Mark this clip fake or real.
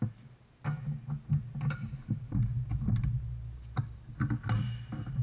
real